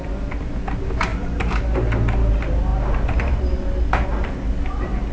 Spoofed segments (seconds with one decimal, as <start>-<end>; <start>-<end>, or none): none